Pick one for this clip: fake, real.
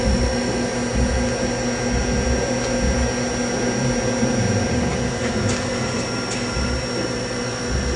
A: real